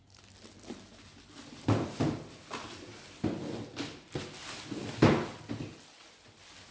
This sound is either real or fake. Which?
real